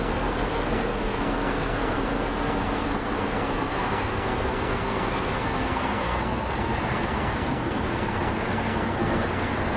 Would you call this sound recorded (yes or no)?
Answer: no